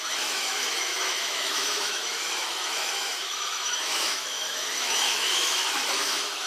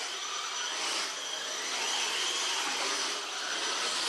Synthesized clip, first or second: first